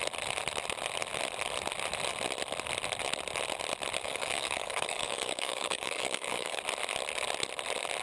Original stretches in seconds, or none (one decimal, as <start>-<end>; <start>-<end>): 0.0-4.0; 6.6-8.0